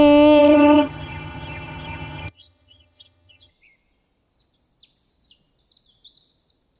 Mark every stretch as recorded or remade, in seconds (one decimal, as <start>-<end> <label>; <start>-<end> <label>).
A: 0.0-0.4 recorded; 0.4-3.5 remade; 3.5-6.8 recorded